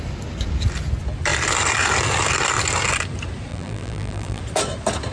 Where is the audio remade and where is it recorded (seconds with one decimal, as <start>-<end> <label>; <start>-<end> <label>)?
0.0-3.5 recorded; 3.5-4.4 remade; 4.4-5.1 recorded